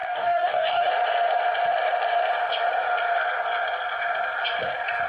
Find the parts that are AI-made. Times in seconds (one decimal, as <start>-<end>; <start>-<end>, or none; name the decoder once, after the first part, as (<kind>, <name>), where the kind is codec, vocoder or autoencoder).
0.0-0.9 (codec, DAC)